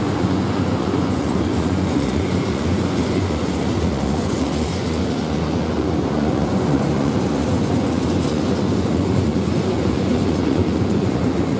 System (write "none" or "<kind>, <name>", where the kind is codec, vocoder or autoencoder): vocoder, Vocos